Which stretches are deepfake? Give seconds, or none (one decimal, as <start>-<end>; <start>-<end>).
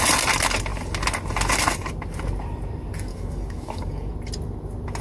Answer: 3.1-4.1